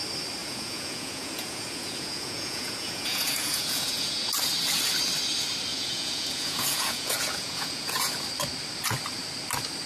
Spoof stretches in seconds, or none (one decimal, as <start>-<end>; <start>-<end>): 0.4-4.3; 5.7-8.1